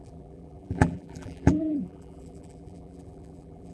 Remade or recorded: remade